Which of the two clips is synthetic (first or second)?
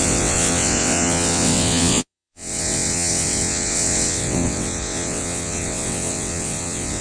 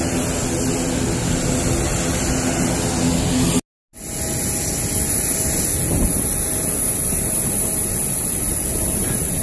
first